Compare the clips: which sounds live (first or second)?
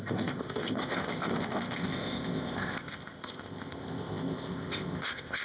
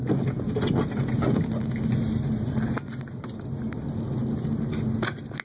second